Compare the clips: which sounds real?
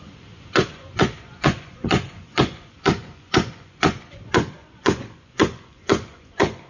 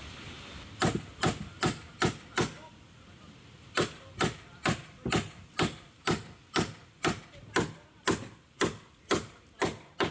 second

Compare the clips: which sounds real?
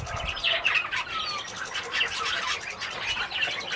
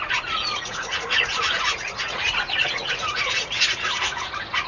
first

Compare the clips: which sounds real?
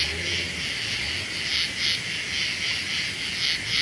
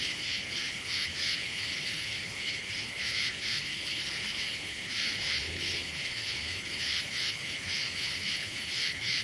first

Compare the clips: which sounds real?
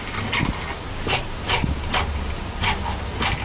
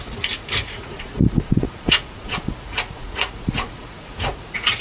first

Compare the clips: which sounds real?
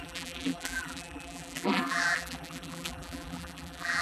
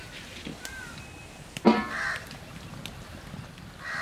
second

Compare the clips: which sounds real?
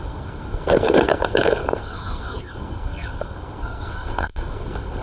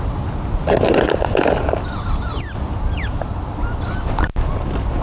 second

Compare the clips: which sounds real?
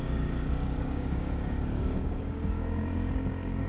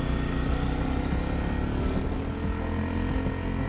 second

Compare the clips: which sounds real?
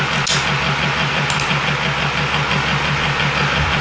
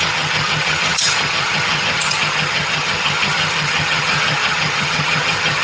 first